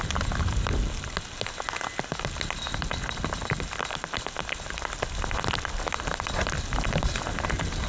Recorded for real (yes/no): yes